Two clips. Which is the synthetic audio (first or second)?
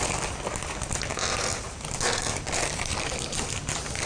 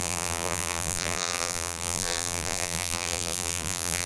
second